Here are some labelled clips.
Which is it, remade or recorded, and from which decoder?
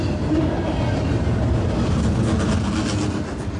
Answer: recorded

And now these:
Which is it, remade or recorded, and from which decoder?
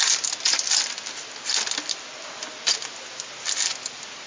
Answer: recorded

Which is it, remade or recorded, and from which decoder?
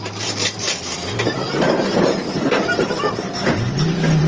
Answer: remade, vocoder, BigVGAN v2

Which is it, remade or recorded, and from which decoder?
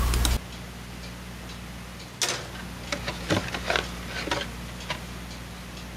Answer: recorded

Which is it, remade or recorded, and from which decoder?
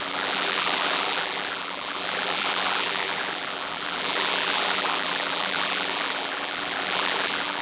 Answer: remade, vocoder, BigVGAN v2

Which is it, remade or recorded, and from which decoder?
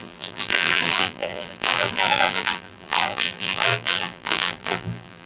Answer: remade, vocoder, BigVGAN v2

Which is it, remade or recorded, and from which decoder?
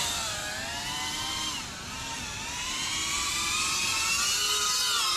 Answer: recorded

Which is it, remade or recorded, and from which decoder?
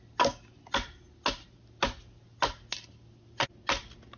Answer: recorded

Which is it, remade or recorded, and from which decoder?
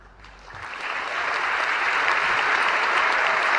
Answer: remade, vocoder, BigVGAN v2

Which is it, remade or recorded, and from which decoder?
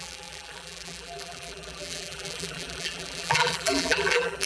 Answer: remade, vocoder, BigVGAN v2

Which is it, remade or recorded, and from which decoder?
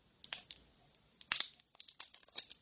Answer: recorded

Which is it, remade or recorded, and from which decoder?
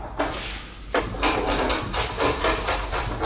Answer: recorded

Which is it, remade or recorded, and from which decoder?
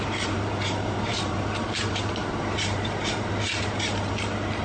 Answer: remade, vocoder, BigVGAN v2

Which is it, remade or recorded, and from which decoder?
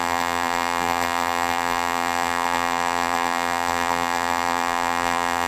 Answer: remade, vocoder, BigVGAN v2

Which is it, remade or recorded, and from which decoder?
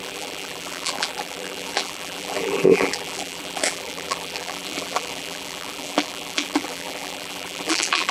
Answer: remade, vocoder, BigVGAN v2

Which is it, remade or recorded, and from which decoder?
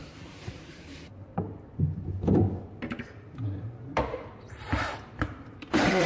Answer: remade, vocoder, BigVGAN v2